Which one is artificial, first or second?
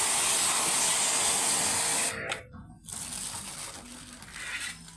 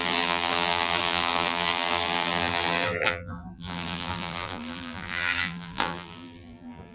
second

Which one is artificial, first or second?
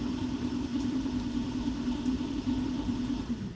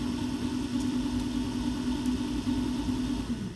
first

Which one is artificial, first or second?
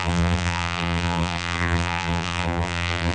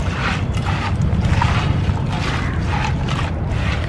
first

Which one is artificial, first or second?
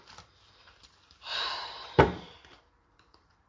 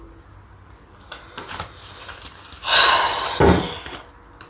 first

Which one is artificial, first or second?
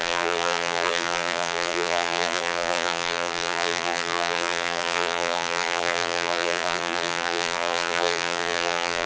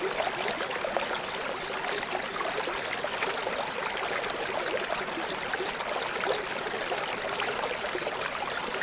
first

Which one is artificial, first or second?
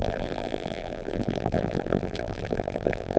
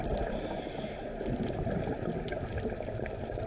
first